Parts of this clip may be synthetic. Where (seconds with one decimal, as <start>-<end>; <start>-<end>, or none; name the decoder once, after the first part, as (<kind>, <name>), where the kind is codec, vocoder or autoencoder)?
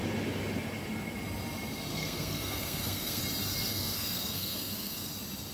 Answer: 1.9-3.2 (codec, SNAC); 3.7-5.1